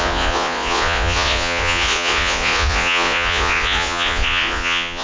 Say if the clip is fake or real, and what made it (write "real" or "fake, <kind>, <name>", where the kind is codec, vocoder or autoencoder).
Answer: fake, vocoder, Vocos